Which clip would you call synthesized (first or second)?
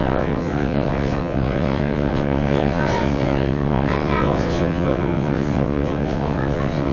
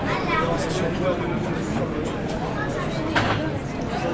first